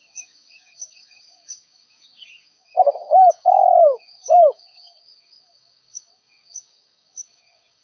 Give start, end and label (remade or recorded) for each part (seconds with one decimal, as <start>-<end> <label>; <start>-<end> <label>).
0.0-7.8 remade